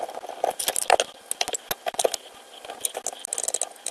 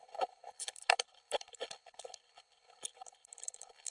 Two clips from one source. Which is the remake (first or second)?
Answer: second